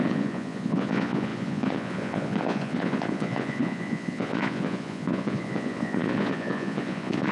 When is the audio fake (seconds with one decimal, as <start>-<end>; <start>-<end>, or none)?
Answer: 0.0-7.3